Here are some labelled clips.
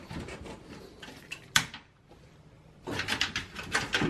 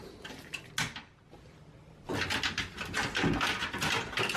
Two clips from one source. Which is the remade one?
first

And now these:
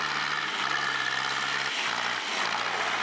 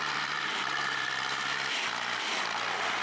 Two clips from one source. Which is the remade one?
second